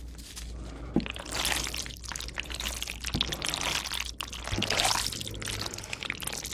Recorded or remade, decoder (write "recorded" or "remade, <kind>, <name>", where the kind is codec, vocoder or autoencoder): recorded